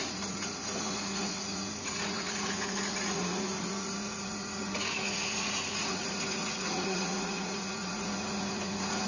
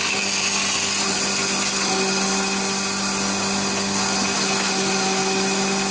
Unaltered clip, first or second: second